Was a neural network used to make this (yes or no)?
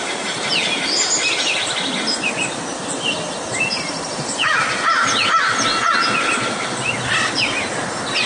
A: no